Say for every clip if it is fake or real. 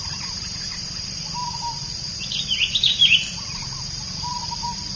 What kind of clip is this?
fake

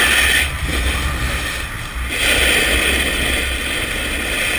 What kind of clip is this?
real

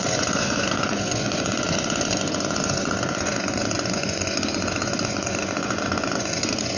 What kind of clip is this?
fake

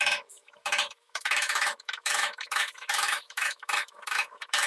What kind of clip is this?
fake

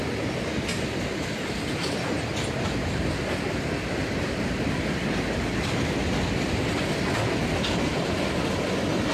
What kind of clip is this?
real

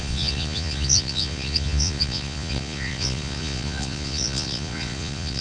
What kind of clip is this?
fake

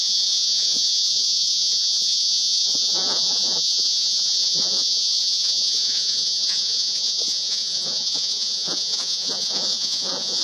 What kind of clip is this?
fake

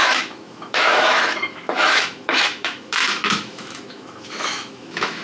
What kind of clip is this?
fake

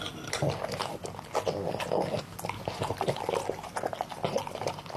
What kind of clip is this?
real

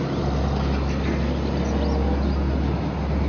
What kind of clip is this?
real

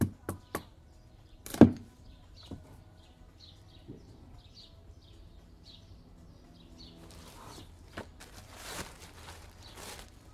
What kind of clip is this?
fake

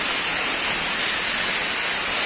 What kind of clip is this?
real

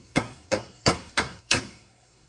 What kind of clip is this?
fake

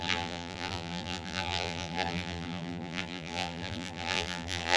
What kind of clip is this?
fake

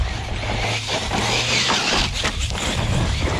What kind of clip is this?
real